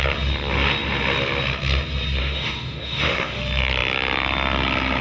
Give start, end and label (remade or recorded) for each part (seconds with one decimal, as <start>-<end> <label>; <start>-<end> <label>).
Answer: 0.0-2.2 recorded; 2.2-3.4 remade; 3.4-5.0 recorded